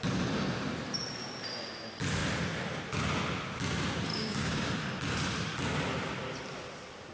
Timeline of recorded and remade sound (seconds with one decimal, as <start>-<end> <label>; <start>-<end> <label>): 0.0-4.1 recorded; 4.1-4.7 remade; 4.7-7.1 recorded